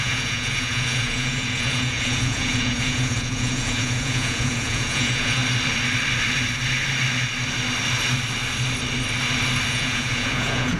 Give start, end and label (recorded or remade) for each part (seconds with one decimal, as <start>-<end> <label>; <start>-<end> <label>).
0.0-5.4 remade; 5.4-9.7 recorded; 9.7-10.8 remade